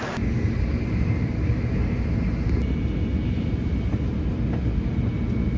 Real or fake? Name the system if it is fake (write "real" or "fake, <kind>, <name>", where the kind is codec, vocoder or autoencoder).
real